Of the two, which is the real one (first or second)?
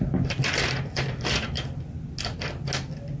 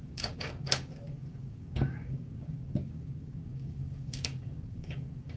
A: first